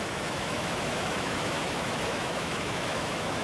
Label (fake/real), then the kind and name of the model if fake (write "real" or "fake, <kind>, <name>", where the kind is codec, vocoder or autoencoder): fake, autoencoder, DAC-VAE